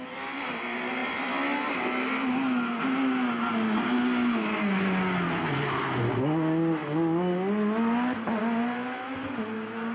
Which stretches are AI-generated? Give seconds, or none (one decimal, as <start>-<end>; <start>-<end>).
none